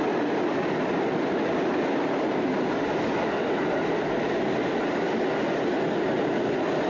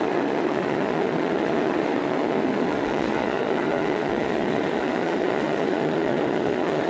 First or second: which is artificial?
second